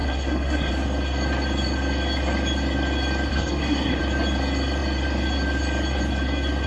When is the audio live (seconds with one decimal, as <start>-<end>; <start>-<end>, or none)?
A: 0.7-3.3; 4.0-6.7